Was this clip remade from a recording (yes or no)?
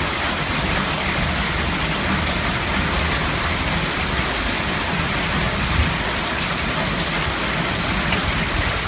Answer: no